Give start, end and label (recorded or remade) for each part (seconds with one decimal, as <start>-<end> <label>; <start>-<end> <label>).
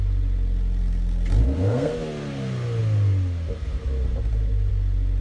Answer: 0.0-1.4 recorded; 1.4-1.9 remade; 1.9-5.2 recorded